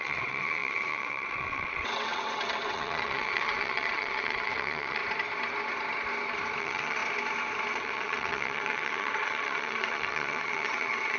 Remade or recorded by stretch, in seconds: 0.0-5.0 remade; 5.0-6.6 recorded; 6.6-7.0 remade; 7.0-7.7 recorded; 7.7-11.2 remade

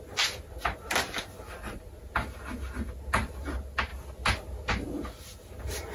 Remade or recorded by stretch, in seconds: 0.0-5.9 recorded

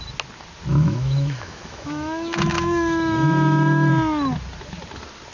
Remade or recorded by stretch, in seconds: 0.0-0.7 recorded; 0.7-3.9 remade; 3.9-5.3 recorded